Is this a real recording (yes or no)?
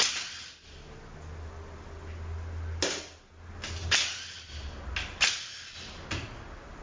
yes